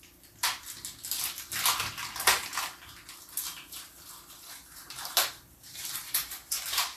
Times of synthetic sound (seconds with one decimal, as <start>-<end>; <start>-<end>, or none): 4.8-7.0